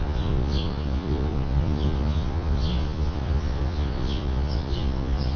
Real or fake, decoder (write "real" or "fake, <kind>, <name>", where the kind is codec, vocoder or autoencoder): fake, vocoder, Vocos